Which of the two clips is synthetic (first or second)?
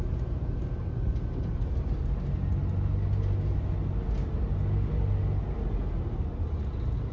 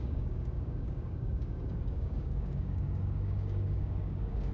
second